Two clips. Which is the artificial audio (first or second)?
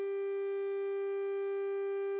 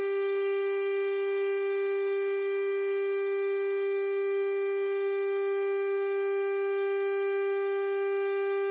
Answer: second